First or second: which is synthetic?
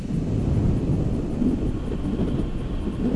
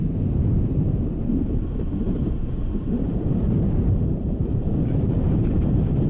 second